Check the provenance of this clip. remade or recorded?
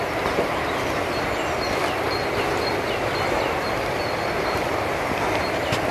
recorded